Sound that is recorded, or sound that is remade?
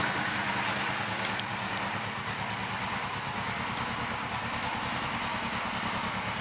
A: recorded